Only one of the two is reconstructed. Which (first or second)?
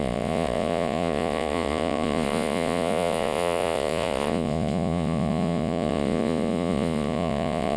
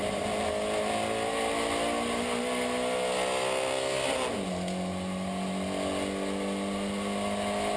first